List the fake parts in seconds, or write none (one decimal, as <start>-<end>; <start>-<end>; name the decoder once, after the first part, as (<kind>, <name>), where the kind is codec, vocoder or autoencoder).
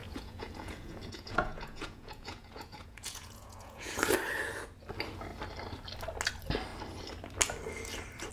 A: 0.0-3.9 (vocoder, Vocos)